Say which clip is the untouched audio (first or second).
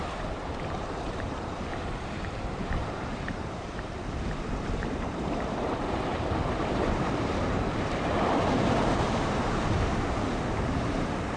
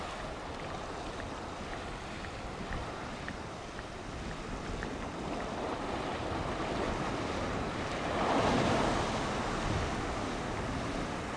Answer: second